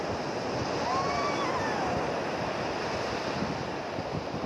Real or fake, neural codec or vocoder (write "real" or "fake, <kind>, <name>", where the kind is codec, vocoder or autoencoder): real